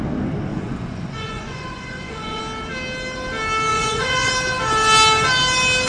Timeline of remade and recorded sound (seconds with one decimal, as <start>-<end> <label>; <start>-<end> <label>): 0.0-0.5 recorded; 0.5-2.4 remade; 2.4-3.7 recorded; 3.7-4.3 remade; 4.3-5.9 recorded